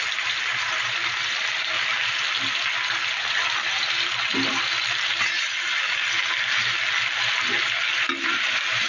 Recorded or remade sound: recorded